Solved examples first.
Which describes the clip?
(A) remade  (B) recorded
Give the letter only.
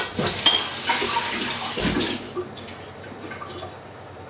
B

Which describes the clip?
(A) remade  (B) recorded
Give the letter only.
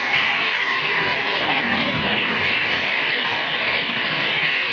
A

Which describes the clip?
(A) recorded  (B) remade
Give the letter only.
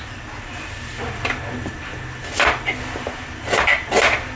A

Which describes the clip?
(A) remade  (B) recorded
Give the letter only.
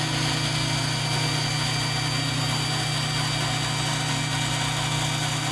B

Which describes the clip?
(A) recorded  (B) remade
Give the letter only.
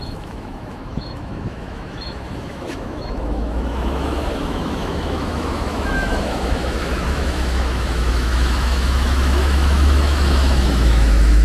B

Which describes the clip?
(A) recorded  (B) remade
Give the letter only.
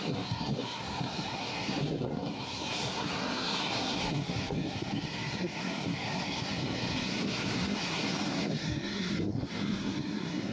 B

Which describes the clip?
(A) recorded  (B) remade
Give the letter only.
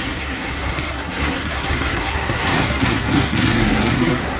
B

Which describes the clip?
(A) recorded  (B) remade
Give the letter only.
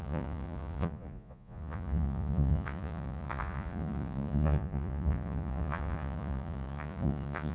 B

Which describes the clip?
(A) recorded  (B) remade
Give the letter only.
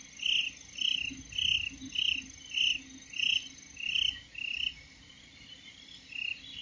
A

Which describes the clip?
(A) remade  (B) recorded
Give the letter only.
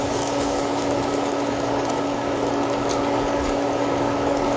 A